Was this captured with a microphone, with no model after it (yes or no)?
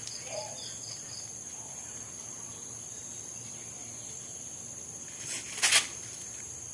yes